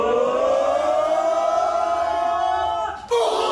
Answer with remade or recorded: recorded